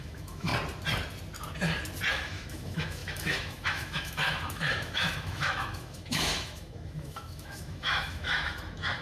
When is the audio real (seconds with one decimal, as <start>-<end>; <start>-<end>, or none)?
0.5-2.1